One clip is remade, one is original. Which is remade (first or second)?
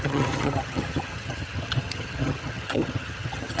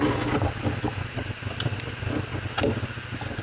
first